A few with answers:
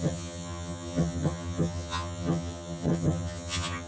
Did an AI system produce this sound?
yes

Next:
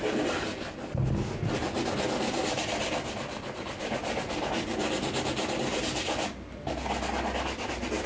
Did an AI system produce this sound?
no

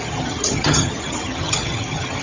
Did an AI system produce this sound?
yes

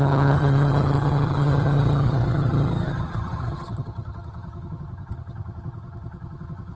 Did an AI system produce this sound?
yes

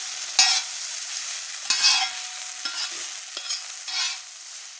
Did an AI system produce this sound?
no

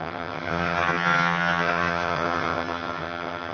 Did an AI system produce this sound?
yes